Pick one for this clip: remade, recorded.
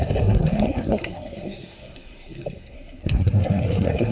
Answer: remade